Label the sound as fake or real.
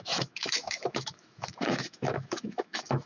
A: fake